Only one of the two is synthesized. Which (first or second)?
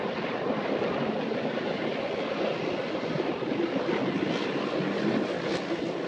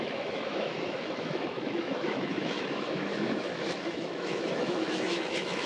second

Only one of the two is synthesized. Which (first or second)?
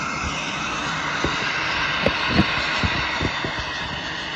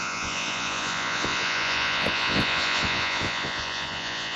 second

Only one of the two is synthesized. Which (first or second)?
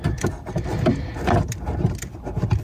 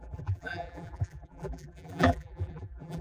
second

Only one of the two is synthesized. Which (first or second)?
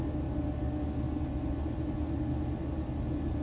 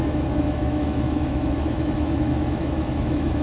second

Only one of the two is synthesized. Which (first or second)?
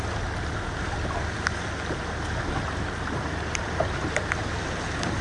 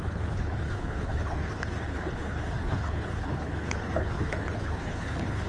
second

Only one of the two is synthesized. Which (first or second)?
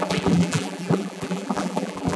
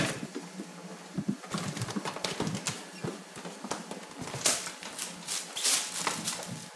first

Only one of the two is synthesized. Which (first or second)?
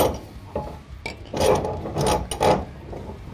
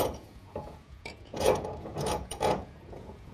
second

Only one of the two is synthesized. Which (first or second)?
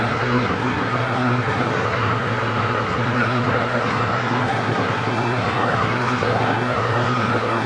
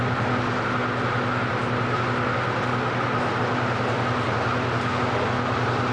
first